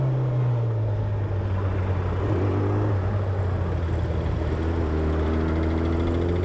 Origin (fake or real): real